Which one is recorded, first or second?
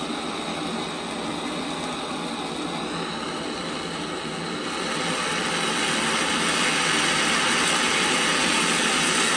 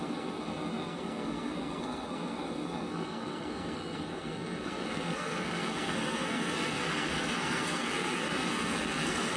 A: first